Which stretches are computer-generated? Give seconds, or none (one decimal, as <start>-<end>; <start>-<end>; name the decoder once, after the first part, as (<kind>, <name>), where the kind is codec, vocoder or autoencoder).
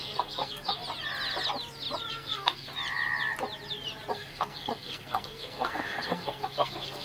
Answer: 0.0-0.8 (codec, SNAC); 2.1-2.7; 4.1-7.0